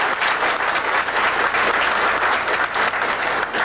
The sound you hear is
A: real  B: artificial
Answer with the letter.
A